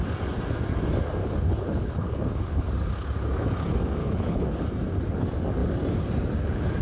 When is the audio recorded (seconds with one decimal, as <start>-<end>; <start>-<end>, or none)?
0.0-1.2; 2.7-4.0; 4.6-6.8